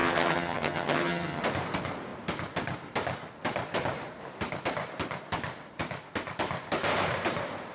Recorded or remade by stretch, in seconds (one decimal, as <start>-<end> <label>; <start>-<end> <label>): 0.0-1.4 remade; 1.4-7.7 recorded

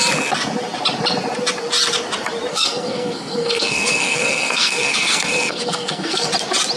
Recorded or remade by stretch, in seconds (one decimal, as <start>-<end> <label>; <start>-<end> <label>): 0.0-2.5 recorded; 2.5-6.3 remade; 6.3-6.8 recorded

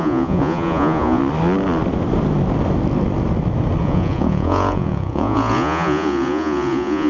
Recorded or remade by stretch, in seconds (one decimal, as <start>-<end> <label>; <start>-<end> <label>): 0.0-1.2 remade; 1.2-3.8 recorded; 3.8-7.1 remade